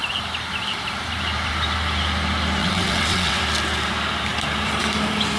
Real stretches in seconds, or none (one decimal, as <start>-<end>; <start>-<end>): 0.0-2.6; 3.4-5.4